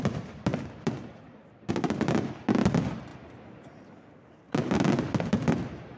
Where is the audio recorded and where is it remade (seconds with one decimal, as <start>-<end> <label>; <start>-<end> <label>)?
0.0-3.1 remade; 3.1-5.3 recorded; 5.3-6.0 remade